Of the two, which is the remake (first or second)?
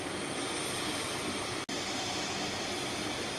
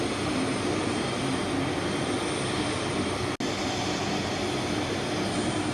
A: first